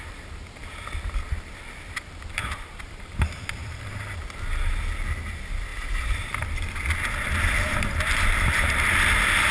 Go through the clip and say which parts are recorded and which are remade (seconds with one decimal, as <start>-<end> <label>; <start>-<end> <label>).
0.0-2.4 recorded; 2.4-3.9 remade; 3.9-5.7 recorded; 5.7-6.8 remade; 6.8-9.5 recorded